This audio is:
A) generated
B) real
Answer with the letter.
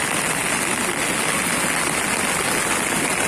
B